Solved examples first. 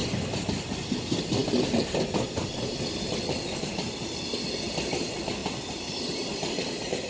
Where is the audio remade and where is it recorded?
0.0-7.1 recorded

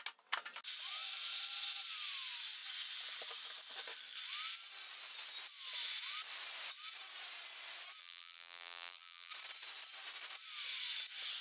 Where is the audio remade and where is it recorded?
0.0-8.0 recorded; 8.0-9.3 remade; 9.3-11.4 recorded

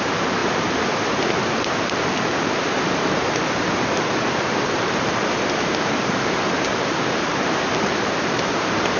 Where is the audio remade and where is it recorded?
0.0-9.0 remade

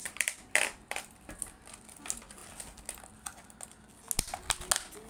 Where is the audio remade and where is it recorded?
0.0-1.3 remade; 1.3-5.1 recorded

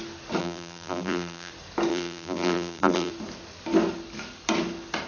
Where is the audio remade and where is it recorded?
0.0-0.4 recorded; 0.4-1.5 remade; 1.5-1.9 recorded; 1.9-3.1 remade; 3.1-5.1 recorded